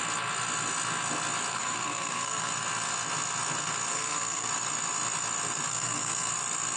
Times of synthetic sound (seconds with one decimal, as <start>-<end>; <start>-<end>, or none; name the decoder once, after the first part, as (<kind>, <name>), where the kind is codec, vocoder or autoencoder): 1.5-2.5 (codec, SNAC); 3.9-4.5; 5.7-6.3